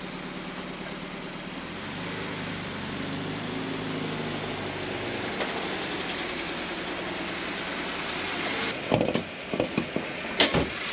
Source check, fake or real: real